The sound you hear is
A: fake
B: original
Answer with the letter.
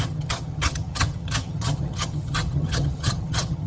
A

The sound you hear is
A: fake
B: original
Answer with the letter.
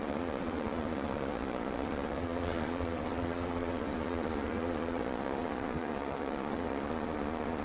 A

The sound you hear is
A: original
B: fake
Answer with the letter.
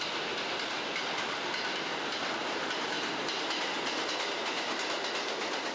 A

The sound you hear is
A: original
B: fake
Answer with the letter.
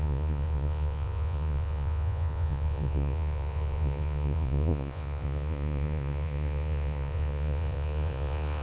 B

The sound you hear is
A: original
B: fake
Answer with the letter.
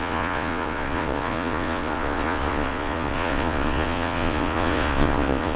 B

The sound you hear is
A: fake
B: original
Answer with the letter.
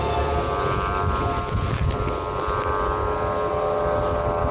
B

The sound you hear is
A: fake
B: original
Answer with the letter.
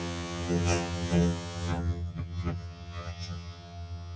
A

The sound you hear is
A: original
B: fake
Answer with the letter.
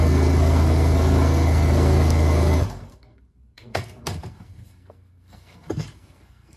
B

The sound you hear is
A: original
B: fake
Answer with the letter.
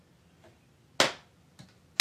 A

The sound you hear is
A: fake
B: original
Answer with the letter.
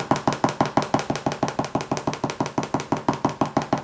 B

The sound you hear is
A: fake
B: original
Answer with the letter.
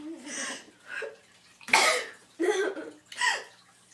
B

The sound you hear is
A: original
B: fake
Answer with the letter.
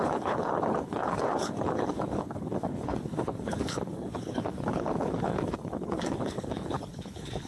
B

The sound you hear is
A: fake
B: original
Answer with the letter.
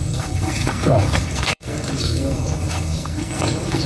A